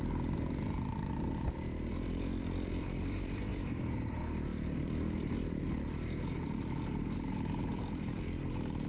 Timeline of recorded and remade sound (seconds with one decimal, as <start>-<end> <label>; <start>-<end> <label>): 0.0-8.9 remade